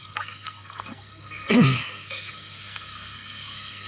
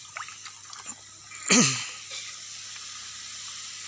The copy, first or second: first